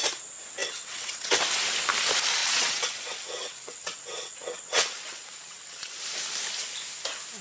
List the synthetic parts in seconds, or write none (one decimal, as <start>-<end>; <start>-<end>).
0.6-1.4; 2.4-6.0

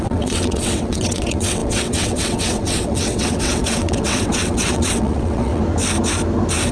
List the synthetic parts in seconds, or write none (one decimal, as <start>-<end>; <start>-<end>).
0.0-5.6

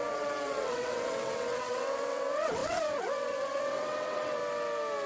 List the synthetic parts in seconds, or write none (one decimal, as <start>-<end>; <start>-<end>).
0.0-4.4

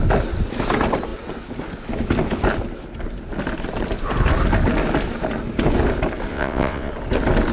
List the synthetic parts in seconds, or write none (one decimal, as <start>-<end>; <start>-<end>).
6.3-6.9

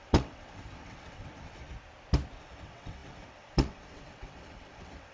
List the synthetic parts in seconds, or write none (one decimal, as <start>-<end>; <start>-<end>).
0.0-1.6; 2.4-5.1

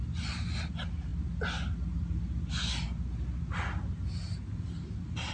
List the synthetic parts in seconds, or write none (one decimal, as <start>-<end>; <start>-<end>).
none

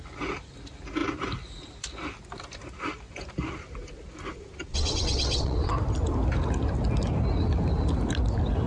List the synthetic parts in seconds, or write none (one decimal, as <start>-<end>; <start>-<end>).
4.7-5.7

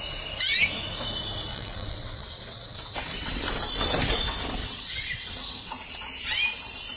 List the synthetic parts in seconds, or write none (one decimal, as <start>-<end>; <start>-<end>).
1.5-3.4; 4.6-5.7